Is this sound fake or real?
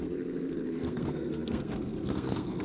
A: fake